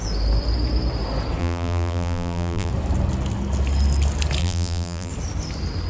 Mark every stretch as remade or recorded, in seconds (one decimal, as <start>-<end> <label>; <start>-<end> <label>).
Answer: 0.0-1.4 recorded; 1.4-2.7 remade; 2.7-4.4 recorded; 4.4-5.1 remade; 5.1-5.9 recorded